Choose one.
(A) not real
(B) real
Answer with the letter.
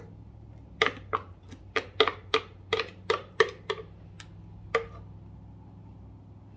B